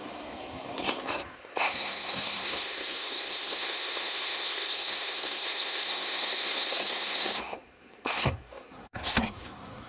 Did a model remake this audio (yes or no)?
yes